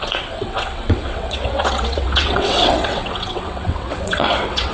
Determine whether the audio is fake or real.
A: fake